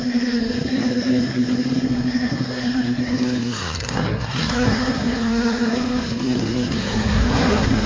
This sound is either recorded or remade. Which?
remade